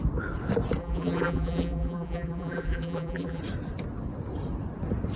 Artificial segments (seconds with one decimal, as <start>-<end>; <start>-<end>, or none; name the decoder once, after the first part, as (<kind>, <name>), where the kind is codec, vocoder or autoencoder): 0.8-3.4 (vocoder, BigVGAN v2)